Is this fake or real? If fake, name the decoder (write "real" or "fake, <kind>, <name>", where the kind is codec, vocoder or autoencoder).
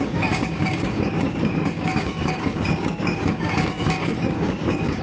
fake, codec, DAC